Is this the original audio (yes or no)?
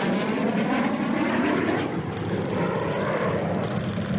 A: no